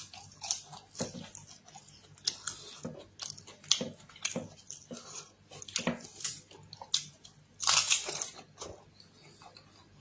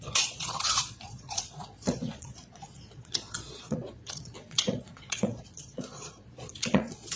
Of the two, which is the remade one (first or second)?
second